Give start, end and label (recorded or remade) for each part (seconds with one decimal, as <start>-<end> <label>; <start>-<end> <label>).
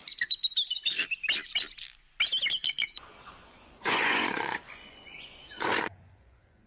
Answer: 0.0-2.6 recorded; 2.6-6.7 remade